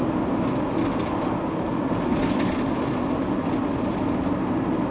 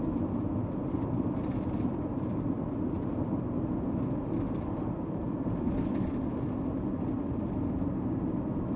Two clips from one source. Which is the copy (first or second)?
second